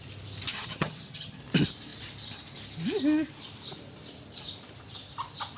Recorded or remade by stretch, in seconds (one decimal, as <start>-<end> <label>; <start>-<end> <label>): 0.0-0.5 recorded; 0.5-1.4 remade; 1.4-5.6 recorded